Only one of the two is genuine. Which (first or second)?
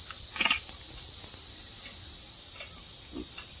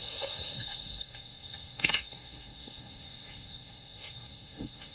first